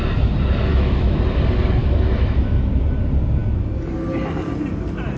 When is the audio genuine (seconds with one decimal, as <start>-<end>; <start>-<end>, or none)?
0.0-0.7; 1.2-1.8; 2.8-5.2